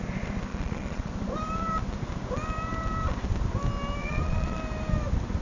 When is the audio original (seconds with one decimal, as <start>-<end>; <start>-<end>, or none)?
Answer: 0.0-0.5; 1.1-4.0; 4.6-5.4